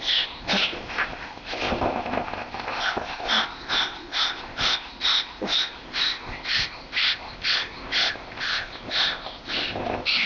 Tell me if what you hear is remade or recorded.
remade